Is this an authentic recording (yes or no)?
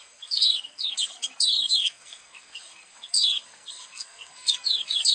no